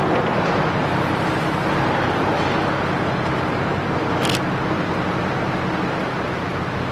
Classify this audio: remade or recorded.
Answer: recorded